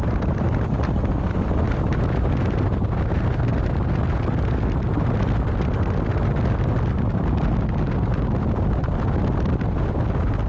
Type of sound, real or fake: real